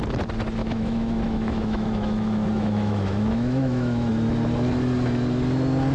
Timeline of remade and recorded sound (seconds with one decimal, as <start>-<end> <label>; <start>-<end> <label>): 0.0-0.6 recorded; 0.6-4.1 remade; 4.1-5.9 recorded